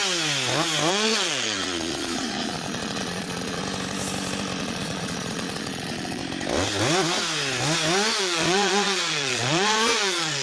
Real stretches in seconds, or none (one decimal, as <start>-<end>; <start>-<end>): 0.0-0.9; 3.6-4.6; 6.2-8.2